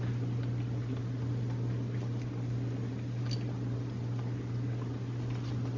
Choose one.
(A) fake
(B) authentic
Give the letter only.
B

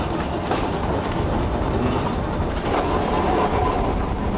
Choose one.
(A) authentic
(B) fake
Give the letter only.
A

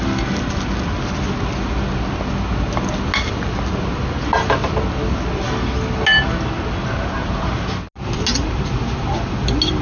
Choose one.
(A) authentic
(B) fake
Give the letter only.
A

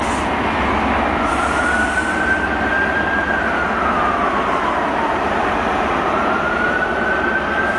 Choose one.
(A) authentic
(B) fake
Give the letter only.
A